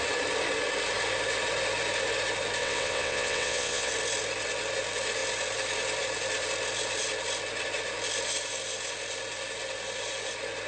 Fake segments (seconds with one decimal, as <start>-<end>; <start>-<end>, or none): 2.6-3.9